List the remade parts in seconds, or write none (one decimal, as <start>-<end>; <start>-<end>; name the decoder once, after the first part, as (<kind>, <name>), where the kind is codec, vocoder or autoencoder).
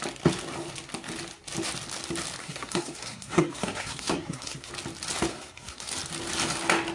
2.4-4.7 (codec, SNAC); 5.3-5.9